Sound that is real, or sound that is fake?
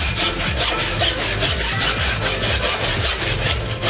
real